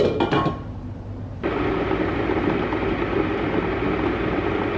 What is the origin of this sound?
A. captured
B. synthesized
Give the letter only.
A